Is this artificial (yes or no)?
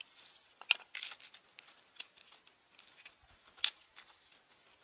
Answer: no